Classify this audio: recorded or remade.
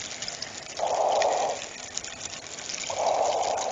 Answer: recorded